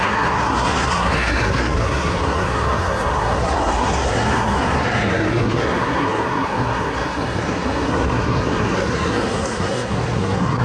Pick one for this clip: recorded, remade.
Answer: remade